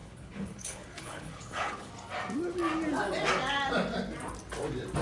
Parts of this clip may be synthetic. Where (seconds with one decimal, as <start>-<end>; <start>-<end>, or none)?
0.0-1.9